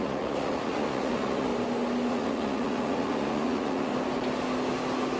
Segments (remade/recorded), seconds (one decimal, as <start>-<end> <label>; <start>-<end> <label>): 0.0-1.5 remade; 1.5-2.1 recorded; 2.1-3.9 remade; 3.9-5.2 recorded